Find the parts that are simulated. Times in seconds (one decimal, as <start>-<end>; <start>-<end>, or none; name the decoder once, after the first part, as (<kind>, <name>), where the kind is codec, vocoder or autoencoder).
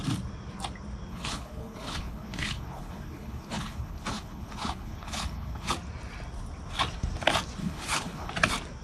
1.1-5.7 (codec, HILCodec); 7.6-8.3